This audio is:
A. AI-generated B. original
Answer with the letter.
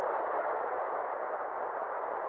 B